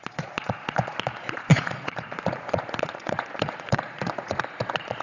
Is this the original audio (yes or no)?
no